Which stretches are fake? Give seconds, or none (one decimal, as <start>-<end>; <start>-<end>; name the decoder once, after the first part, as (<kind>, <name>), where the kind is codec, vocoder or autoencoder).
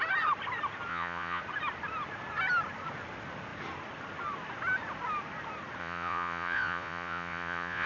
0.9-1.4 (vocoder, Vocos); 5.8-7.9